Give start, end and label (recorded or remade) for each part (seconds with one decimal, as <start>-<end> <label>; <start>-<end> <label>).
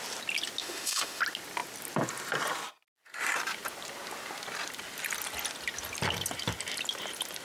0.0-0.6 recorded; 0.6-1.2 remade; 1.2-7.4 recorded